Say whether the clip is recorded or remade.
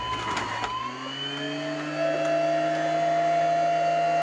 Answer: recorded